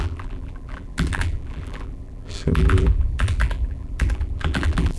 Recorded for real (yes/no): no